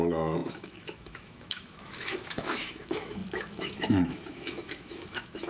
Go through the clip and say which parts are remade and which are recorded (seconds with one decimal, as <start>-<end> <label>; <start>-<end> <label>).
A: 0.0-5.5 remade